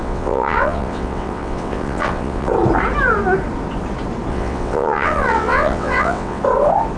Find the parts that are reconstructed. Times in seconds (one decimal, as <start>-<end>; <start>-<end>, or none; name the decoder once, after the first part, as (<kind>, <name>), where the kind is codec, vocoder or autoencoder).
0.0-2.5 (vocoder, WaveNeXt); 4.3-6.4